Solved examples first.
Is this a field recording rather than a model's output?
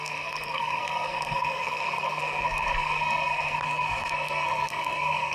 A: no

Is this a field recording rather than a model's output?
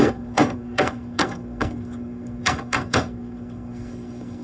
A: no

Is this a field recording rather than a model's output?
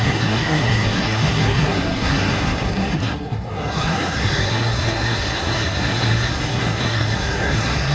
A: no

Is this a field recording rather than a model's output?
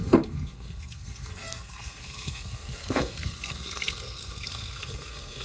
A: no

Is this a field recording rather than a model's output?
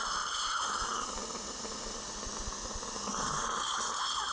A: yes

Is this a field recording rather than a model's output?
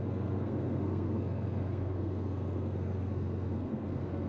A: no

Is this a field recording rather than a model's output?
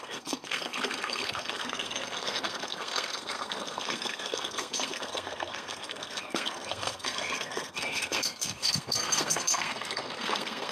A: no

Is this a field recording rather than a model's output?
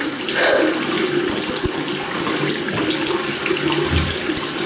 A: yes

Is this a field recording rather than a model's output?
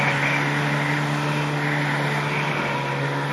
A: yes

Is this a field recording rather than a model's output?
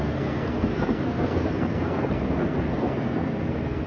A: no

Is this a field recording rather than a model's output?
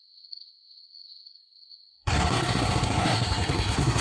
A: no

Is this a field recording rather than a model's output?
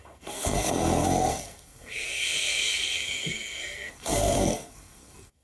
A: no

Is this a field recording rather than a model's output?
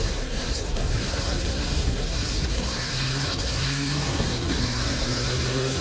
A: no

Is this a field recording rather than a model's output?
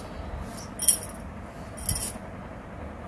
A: yes